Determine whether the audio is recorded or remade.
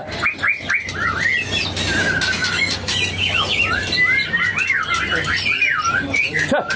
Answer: recorded